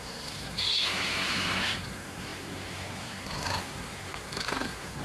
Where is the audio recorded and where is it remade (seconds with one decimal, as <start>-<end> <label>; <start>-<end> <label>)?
0.0-5.0 remade